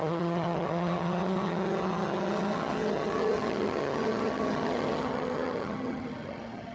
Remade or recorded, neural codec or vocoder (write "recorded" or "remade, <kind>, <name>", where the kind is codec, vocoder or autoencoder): remade, vocoder, HiFi-GAN